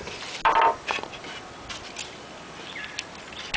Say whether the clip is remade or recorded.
recorded